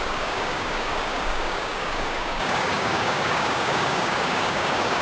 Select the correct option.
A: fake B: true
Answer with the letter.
A